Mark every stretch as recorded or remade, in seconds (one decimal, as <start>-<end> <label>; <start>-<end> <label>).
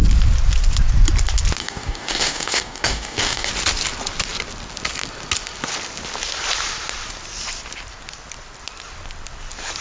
0.0-1.6 recorded; 1.6-3.5 remade; 3.5-9.8 recorded